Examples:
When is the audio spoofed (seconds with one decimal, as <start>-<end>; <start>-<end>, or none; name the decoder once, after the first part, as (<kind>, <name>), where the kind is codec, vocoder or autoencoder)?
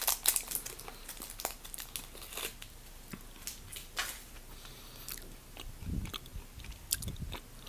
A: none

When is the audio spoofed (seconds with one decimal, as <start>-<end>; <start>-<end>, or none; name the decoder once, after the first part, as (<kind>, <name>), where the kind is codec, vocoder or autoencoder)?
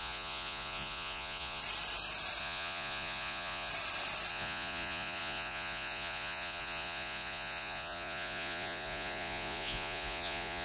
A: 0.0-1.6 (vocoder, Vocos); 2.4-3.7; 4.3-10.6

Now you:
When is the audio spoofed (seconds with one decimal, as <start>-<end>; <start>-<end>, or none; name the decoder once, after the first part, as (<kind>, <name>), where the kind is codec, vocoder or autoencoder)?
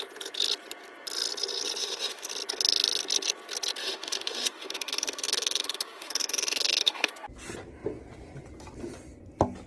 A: 1.8-2.3 (autoencoder, DAC-VAE); 3.8-7.1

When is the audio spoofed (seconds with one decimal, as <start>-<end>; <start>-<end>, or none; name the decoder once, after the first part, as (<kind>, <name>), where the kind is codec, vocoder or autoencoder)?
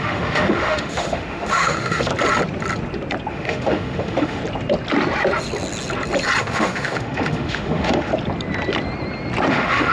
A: 0.0-2.1 (autoencoder, DAC-VAE); 3.3-4.4; 6.4-8.1; 9.5-9.9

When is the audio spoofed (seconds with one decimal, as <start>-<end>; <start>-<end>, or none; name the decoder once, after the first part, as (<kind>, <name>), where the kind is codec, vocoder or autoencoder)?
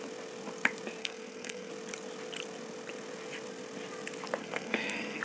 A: 1.0-1.7 (codec, SNAC); 4.4-5.2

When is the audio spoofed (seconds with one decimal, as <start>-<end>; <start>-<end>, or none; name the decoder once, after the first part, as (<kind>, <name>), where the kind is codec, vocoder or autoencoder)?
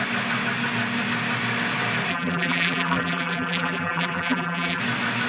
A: 2.1-4.8 (vocoder, BigVGAN v2)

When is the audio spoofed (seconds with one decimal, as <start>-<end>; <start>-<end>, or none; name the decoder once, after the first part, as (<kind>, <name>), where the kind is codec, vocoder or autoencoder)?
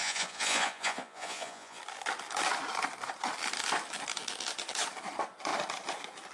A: 0.0-1.8 (vocoder, Vocos)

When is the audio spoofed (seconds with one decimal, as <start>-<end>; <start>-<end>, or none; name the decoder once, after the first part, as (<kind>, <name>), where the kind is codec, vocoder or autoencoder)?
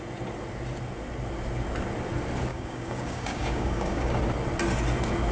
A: 2.5-4.2 (codec, DAC)